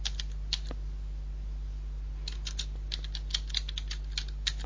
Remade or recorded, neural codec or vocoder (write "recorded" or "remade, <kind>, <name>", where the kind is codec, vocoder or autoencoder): recorded